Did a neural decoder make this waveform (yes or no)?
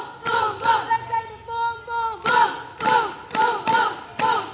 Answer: no